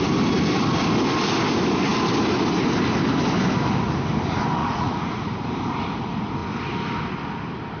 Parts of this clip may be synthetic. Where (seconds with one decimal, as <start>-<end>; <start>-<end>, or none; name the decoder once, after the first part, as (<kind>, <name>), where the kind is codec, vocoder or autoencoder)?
4.6-5.3 (vocoder, Vocos)